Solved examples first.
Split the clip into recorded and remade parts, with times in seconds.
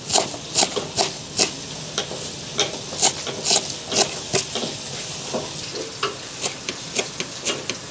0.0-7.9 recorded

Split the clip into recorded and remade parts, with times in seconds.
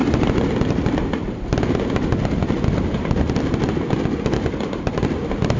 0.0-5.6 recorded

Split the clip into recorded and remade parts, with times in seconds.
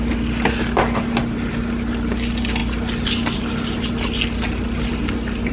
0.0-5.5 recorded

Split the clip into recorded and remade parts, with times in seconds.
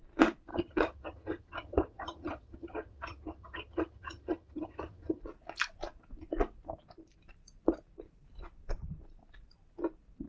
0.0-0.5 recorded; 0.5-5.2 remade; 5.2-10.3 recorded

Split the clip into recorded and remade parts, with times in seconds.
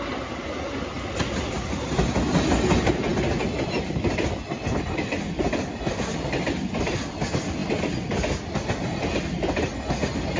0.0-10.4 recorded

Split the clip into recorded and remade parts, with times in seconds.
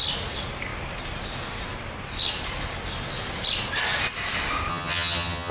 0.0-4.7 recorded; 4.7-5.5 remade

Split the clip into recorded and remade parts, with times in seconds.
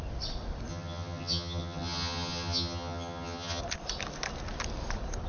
0.0-0.7 recorded; 0.7-3.6 remade; 3.6-5.3 recorded